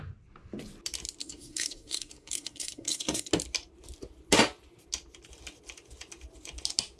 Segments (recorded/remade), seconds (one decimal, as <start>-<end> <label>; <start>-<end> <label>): 0.0-1.2 recorded; 1.2-3.3 remade; 3.3-7.0 recorded